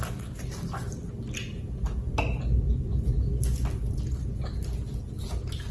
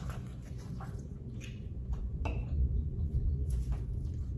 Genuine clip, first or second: first